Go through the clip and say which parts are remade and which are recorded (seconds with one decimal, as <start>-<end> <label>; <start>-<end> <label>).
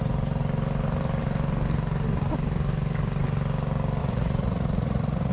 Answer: 0.0-4.0 recorded; 4.0-5.3 remade